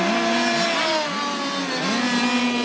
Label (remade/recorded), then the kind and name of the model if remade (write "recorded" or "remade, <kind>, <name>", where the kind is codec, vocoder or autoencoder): recorded